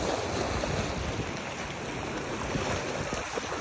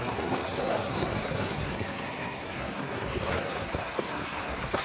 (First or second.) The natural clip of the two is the first